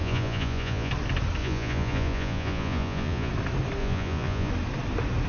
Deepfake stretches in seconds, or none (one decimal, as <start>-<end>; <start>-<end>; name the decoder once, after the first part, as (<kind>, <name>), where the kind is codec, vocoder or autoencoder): 0.0-0.9 (vocoder, Vocos); 1.4-3.3; 3.8-4.5